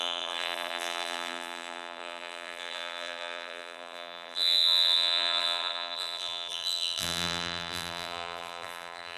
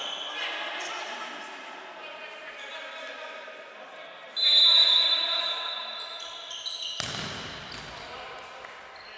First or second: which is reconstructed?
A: first